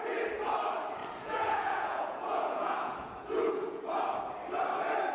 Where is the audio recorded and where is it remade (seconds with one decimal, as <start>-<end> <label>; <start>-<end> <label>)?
0.0-1.0 recorded; 1.0-3.8 remade; 3.8-5.1 recorded